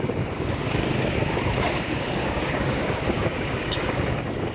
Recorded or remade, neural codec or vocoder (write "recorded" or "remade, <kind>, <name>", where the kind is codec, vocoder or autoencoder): remade, codec, DAC